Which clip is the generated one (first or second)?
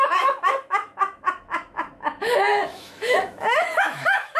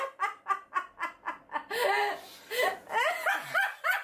first